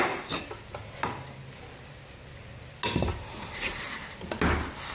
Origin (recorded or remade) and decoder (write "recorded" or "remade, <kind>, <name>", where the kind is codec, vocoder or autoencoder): recorded